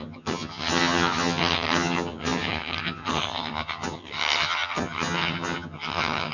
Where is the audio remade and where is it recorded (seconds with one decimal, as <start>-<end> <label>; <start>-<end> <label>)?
0.0-6.3 remade